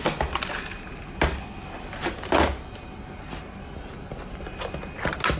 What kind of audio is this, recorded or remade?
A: recorded